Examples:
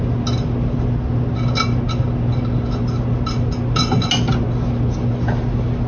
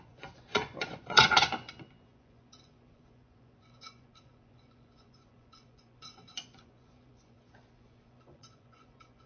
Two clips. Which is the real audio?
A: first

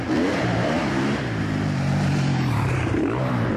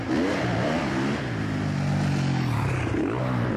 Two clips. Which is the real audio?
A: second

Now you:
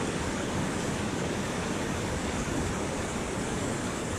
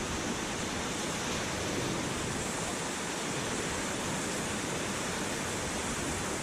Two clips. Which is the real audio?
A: second